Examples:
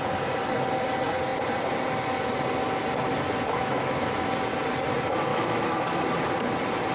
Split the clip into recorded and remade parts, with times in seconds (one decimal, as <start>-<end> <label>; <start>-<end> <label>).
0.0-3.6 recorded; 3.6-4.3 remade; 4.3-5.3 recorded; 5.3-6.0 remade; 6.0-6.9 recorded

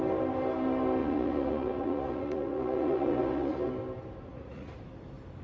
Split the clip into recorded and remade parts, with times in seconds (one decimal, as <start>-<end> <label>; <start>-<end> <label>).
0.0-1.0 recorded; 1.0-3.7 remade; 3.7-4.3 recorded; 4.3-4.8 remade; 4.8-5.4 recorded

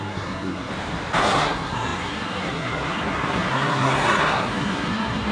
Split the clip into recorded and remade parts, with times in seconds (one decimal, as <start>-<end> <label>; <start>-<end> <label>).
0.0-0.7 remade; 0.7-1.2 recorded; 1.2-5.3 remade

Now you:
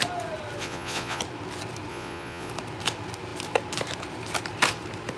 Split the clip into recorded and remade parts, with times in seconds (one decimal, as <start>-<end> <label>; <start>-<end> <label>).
0.0-0.6 recorded; 0.6-1.2 remade; 1.2-1.9 recorded; 1.9-2.5 remade; 2.5-5.2 recorded